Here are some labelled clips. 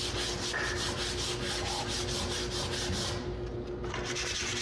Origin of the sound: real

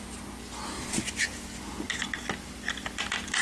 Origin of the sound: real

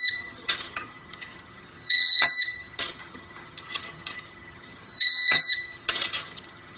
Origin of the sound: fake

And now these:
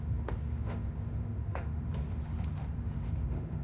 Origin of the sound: fake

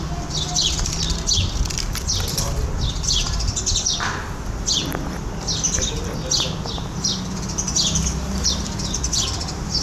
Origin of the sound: real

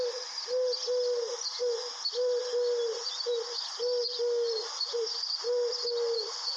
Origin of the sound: real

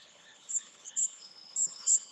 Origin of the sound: fake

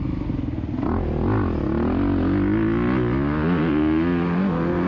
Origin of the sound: real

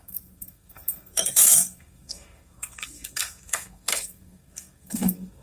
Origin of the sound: fake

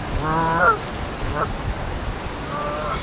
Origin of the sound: real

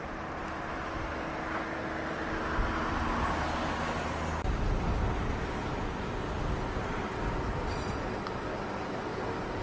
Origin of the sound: real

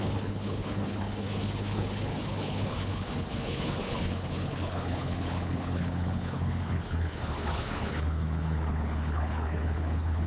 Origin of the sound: fake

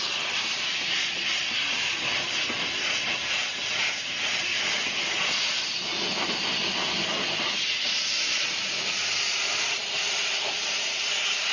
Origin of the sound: real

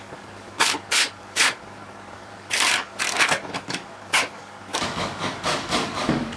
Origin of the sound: fake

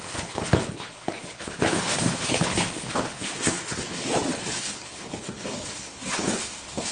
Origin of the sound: fake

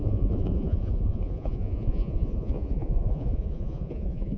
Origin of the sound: fake